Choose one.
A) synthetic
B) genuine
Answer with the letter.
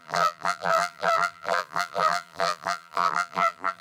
A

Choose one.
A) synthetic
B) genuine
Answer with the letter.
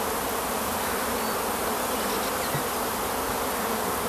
B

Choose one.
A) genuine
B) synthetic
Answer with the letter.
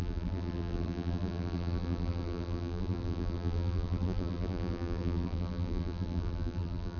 B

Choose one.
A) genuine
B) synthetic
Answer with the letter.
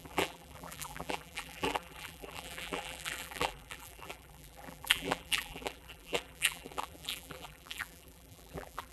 B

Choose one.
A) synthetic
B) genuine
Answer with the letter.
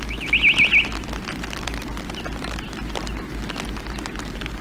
B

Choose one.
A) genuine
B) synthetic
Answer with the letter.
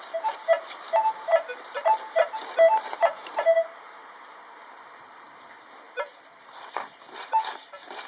B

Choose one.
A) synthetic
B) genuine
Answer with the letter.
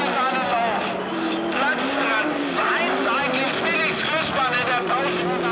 B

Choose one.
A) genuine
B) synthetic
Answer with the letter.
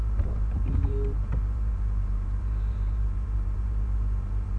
B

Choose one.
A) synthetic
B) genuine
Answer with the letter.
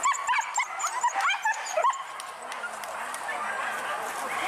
B